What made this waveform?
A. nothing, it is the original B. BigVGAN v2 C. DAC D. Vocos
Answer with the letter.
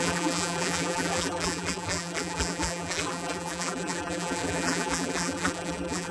B